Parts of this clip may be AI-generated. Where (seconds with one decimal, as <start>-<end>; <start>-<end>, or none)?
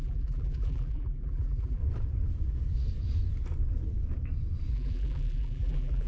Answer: 0.0-1.8; 4.7-6.1